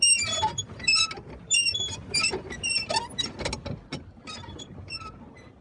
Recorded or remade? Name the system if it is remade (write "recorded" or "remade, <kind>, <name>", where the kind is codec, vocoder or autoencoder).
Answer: recorded